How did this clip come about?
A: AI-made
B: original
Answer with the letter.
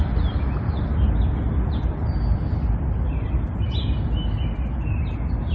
B